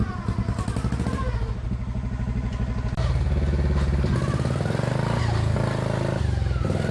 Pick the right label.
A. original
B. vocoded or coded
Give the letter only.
A